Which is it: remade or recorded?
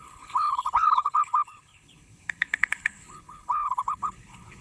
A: remade